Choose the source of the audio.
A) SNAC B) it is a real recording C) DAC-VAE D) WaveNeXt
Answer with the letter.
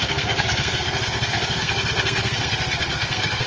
A